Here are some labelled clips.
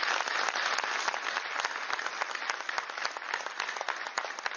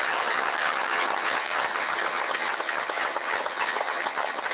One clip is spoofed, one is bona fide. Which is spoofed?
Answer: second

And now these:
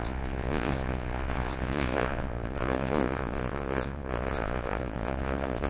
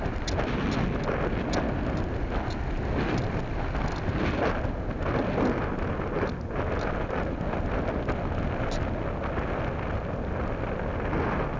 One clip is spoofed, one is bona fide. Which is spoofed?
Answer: first